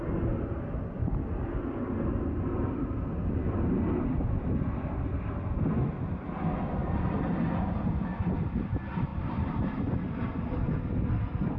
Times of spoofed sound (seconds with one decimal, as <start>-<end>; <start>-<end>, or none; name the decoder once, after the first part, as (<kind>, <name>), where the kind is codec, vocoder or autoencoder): 9.1-9.8 (vocoder, BigVGAN v2)